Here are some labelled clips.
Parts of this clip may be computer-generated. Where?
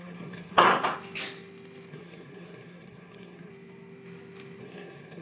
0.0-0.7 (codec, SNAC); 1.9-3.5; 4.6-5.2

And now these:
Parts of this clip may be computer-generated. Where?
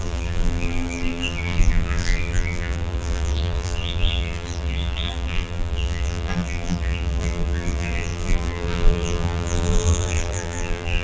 0.0-11.0 (vocoder, BigVGAN v2)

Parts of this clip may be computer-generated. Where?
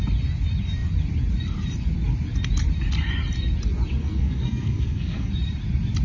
4.0-5.3 (codec, SNAC)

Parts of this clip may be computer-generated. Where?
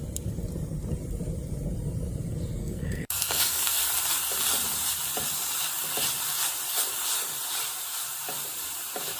2.6-3.8 (codec, SNAC)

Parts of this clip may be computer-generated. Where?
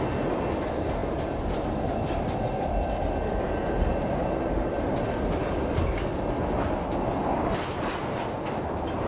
none